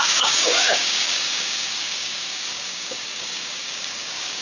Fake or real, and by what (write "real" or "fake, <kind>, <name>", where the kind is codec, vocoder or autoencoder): fake, codec, DAC